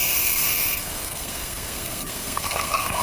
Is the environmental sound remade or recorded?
remade